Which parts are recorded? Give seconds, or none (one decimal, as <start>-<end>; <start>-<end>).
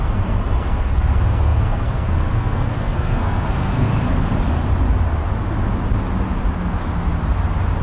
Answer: 3.9-7.8